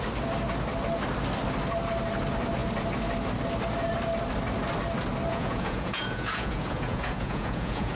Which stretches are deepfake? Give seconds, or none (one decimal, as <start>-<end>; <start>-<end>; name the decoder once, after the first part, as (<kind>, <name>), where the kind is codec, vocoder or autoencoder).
5.3-8.0 (vocoder, Vocos)